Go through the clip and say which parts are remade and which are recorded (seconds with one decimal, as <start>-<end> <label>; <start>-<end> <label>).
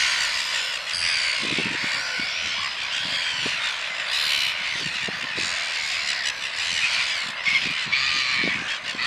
0.0-9.1 recorded